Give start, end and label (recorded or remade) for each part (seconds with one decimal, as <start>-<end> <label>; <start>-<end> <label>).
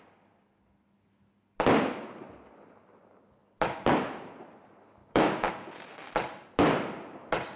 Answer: 0.0-5.0 recorded; 5.0-5.5 remade; 5.5-7.6 recorded